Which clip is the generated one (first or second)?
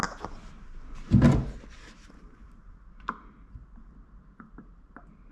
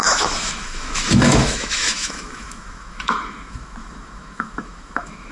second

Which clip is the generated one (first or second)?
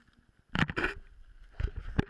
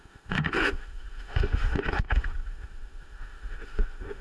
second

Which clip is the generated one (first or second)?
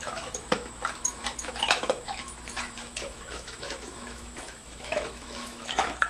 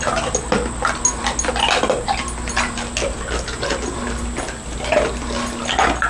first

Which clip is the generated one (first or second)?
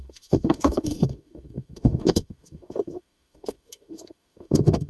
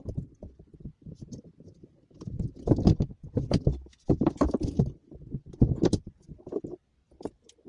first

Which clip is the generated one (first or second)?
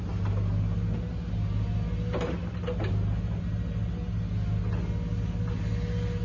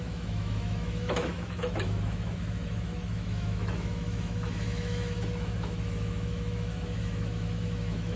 second